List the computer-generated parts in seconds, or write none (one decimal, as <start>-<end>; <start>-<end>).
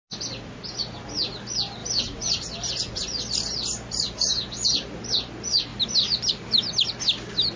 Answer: 1.8-2.7